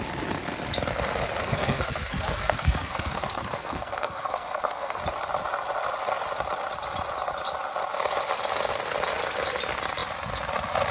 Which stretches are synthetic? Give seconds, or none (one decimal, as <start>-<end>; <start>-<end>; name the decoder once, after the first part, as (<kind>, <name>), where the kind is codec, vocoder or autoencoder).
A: 1.4-5.0 (codec, SNAC)